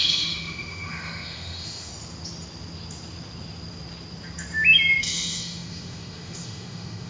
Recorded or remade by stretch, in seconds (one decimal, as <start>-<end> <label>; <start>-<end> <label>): 0.0-1.9 remade; 1.9-5.0 recorded; 5.0-7.1 remade